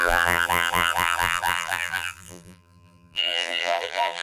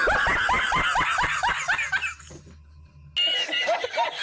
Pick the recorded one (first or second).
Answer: second